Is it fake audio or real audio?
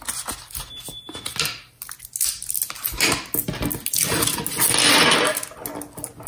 real